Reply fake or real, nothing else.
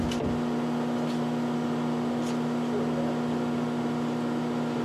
real